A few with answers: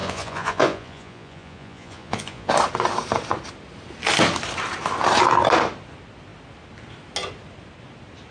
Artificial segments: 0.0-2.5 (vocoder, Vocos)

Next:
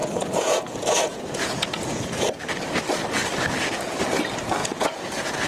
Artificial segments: 0.0-2.3 (vocoder, Vocos); 4.6-5.5

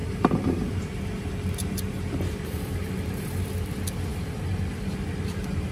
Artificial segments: 0.0-3.4 (vocoder, BigVGAN v2); 4.1-4.7

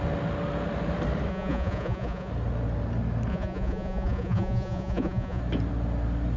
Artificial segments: 1.3-2.3 (vocoder, Vocos); 3.3-5.4

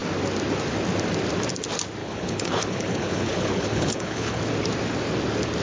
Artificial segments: 2.0-4.4 (codec, HILCodec)

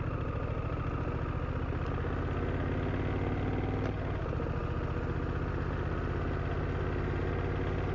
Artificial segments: none

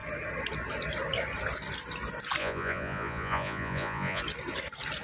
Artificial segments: 2.4-4.2 (vocoder, Vocos)

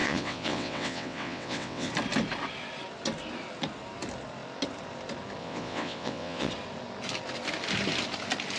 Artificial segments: 0.0-1.9 (vocoder, WaveNeXt); 5.4-6.5